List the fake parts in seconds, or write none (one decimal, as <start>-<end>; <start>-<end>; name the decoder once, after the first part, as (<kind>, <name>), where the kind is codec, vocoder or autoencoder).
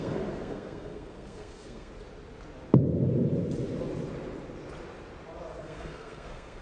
0.0-1.9 (codec, SNAC); 5.6-6.6